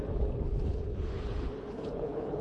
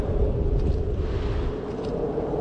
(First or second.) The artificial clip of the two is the first